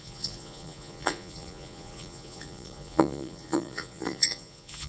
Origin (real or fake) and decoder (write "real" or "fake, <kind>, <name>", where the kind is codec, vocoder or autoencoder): fake, vocoder, Vocos